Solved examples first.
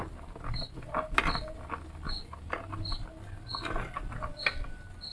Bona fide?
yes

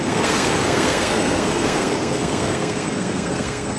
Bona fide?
no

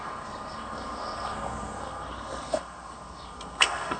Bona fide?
no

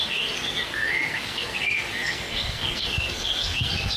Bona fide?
no